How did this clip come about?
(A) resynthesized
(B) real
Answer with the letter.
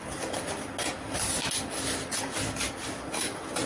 B